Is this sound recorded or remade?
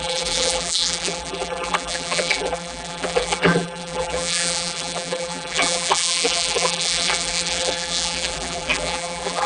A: remade